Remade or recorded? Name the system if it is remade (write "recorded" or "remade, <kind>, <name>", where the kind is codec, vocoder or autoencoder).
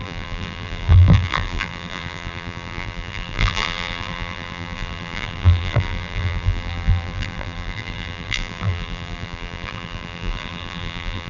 remade, vocoder, BigVGAN v2